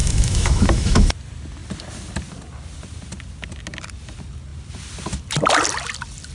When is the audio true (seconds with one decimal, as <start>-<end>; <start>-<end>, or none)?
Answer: 1.1-6.3